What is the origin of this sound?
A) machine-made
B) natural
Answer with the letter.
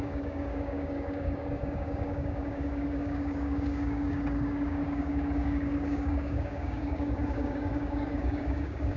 A